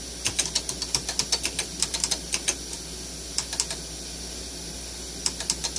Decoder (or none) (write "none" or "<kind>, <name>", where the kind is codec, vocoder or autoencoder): none